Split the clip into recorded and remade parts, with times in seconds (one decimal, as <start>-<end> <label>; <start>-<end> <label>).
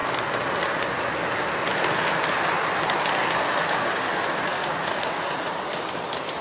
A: 0.0-4.5 recorded; 4.5-5.5 remade; 5.5-6.4 recorded